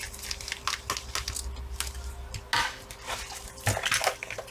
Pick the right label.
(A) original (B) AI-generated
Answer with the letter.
A